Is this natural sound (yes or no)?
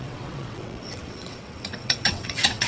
no